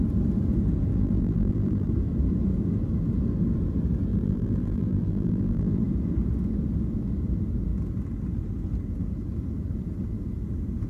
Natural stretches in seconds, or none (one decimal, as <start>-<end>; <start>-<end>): 0.0-0.9; 1.9-4.1; 5.8-10.9